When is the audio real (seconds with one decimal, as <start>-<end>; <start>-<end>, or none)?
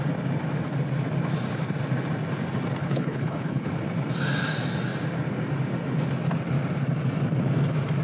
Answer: 0.0-2.8; 3.7-8.0